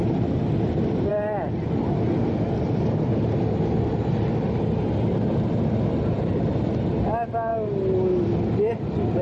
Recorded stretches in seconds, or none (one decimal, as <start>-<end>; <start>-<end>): 0.0-9.2